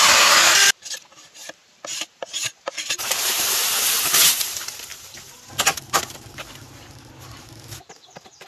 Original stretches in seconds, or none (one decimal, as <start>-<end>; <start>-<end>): 0.0-1.6; 3.6-8.5